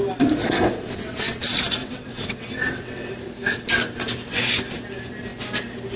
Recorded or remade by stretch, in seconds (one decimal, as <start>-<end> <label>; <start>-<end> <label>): 0.0-0.4 recorded; 0.4-1.4 remade; 1.4-1.8 recorded; 1.8-3.1 remade; 3.1-6.0 recorded